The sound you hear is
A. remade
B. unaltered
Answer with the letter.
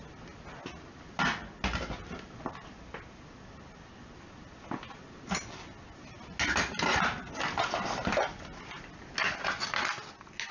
B